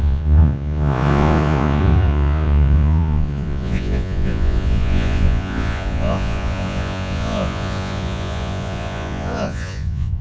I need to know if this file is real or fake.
fake